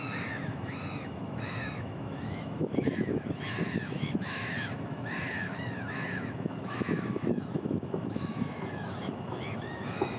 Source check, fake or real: fake